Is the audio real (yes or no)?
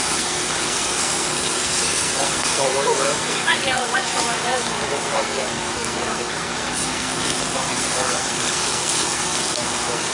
no